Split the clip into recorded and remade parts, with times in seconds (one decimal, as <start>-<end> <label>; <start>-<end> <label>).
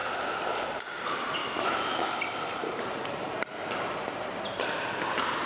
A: 0.0-1.4 recorded; 1.4-2.1 remade; 2.1-5.5 recorded